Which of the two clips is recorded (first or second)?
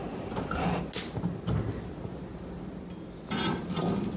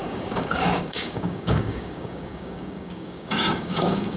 first